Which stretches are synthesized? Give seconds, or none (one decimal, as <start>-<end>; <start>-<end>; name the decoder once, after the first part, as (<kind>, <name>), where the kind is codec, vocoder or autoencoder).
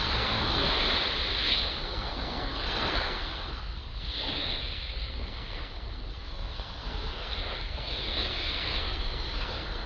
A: 0.0-0.8 (codec, SNAC); 1.4-9.9